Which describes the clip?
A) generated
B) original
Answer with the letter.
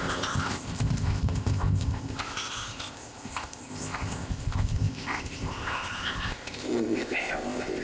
A